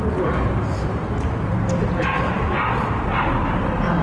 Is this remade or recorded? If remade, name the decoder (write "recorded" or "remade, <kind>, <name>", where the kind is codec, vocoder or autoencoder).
recorded